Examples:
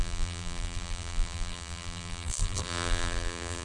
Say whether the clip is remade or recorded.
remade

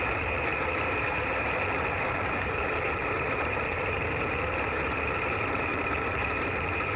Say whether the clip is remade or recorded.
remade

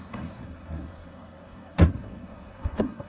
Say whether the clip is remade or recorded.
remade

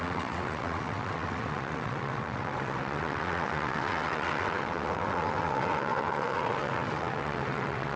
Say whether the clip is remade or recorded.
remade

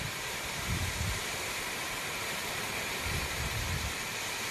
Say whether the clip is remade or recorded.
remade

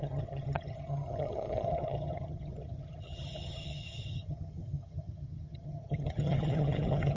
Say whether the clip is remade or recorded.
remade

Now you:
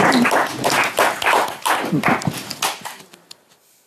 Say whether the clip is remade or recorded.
recorded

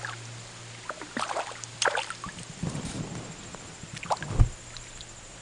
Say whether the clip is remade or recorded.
recorded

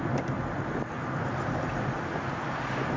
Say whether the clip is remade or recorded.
recorded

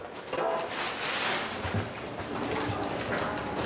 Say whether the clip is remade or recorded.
recorded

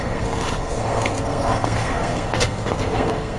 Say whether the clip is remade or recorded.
remade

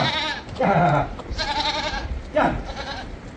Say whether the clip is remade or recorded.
recorded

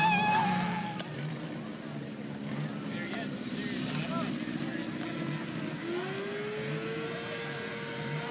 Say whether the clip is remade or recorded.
recorded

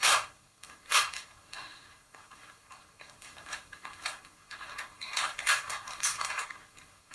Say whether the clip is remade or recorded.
remade